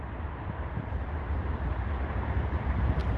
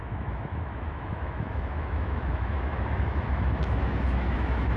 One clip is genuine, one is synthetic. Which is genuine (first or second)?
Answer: first